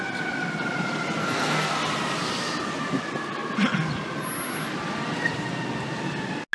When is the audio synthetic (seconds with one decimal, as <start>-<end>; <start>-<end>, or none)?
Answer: 1.2-1.7